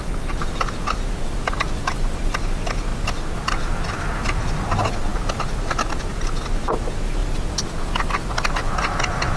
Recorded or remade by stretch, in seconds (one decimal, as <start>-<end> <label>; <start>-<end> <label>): 0.0-9.4 recorded